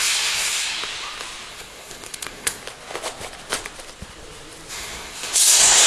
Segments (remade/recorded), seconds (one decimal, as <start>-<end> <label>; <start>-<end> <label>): 0.0-0.8 remade; 0.8-1.5 recorded; 1.5-2.6 remade; 2.6-4.7 recorded; 4.7-5.9 remade